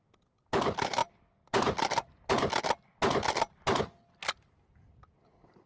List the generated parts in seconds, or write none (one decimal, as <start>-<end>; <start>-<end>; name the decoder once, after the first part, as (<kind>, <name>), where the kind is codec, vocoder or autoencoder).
none

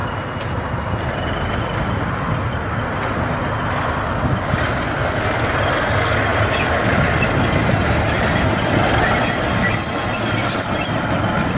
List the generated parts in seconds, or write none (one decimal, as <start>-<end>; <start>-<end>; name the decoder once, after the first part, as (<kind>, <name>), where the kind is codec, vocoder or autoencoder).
0.0-1.3 (vocoder, BigVGAN v2); 6.3-8.5